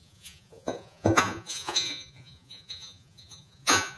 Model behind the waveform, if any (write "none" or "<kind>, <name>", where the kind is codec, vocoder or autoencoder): vocoder, Vocos